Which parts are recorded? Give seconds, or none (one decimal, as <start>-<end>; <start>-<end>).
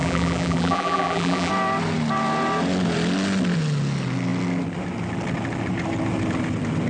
1.5-6.9